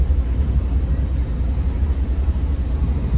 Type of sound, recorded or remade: recorded